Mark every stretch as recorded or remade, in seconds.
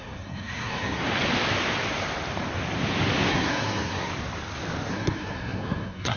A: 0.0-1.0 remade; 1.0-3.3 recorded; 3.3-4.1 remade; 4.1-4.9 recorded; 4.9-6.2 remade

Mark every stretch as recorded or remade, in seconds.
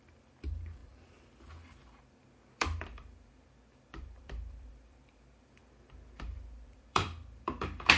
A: 0.0-8.0 remade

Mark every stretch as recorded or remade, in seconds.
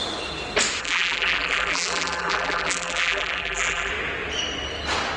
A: 0.0-0.8 recorded; 0.8-3.9 remade; 3.9-5.2 recorded